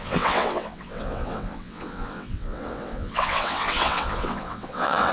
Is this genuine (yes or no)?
no